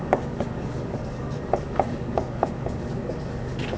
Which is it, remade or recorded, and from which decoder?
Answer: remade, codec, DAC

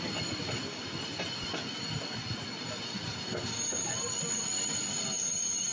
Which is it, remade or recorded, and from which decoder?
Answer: recorded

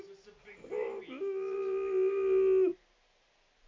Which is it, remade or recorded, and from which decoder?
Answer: recorded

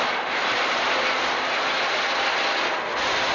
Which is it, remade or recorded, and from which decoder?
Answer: recorded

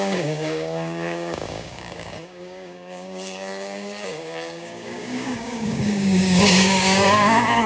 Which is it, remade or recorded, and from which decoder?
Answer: remade, codec, DAC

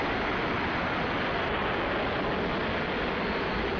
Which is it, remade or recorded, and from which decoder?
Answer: recorded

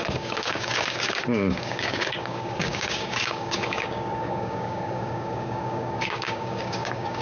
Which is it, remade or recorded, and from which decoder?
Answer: remade, codec, DAC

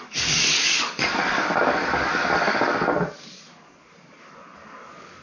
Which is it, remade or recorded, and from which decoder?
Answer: remade, codec, DAC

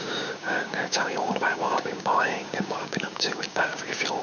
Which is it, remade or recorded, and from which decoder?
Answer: remade, codec, DAC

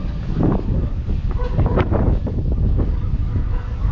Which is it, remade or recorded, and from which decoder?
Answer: remade, codec, DAC